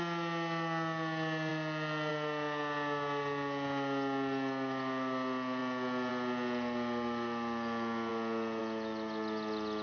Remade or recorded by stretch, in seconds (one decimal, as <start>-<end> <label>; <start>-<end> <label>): 0.0-9.8 recorded